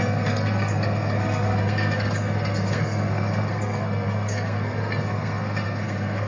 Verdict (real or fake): fake